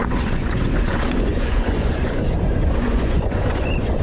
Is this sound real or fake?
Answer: fake